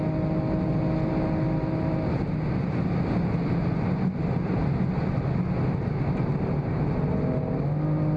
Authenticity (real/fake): real